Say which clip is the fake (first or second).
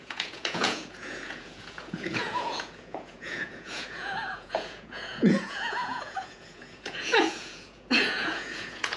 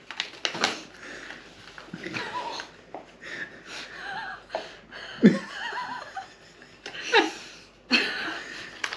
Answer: first